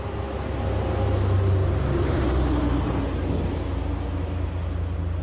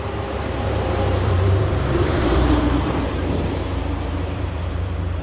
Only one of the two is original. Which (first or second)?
first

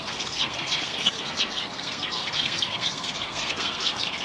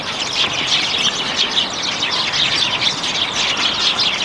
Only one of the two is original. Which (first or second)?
second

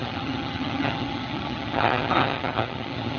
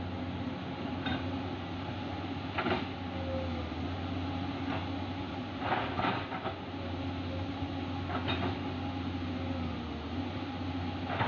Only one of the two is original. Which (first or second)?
second